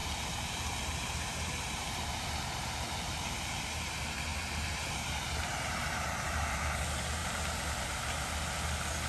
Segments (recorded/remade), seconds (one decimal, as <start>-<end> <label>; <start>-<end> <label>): 0.0-3.7 remade; 3.7-4.3 recorded; 4.3-6.8 remade; 6.8-9.1 recorded